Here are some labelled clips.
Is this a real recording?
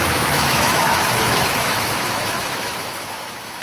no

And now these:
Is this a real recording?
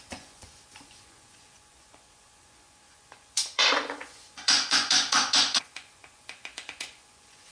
no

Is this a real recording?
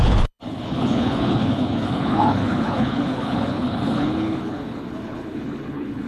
no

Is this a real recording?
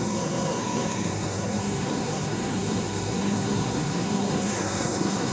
no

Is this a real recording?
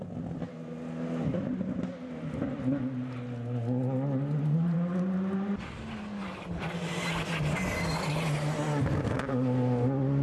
yes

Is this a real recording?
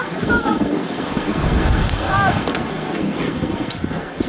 no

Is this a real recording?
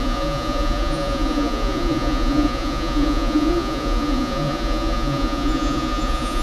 no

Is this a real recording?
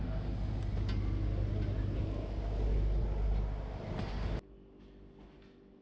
yes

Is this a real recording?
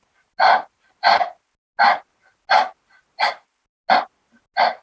yes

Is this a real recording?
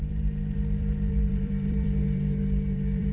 no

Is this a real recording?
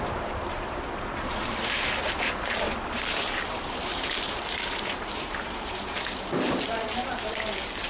no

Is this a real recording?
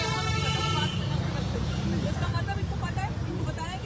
no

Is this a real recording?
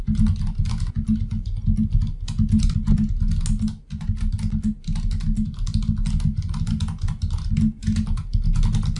yes